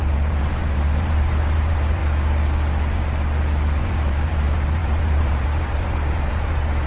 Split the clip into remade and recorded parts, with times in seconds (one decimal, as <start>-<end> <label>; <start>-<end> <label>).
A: 0.0-2.0 remade; 2.0-3.8 recorded; 3.8-6.9 remade

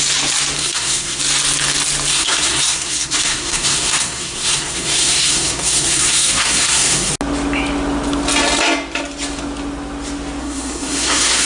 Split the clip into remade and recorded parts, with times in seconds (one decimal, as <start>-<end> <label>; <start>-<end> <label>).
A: 0.0-0.6 recorded; 0.6-1.2 remade; 1.2-2.1 recorded; 2.1-7.1 remade; 7.1-10.4 recorded; 10.4-11.5 remade

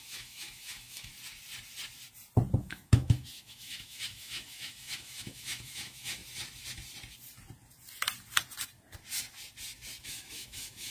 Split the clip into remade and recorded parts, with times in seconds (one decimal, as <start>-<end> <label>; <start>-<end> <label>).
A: 0.0-1.1 remade; 1.1-2.6 recorded; 2.6-6.2 remade; 6.2-10.0 recorded; 10.0-10.9 remade

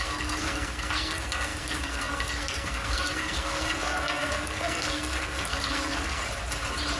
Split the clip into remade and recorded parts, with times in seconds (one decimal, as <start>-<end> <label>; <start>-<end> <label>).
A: 0.0-6.2 remade; 6.2-7.0 recorded